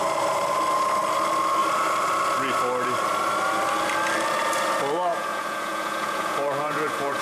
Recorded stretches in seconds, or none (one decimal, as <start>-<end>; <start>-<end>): 0.0-5.1